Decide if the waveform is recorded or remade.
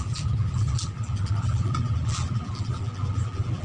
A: remade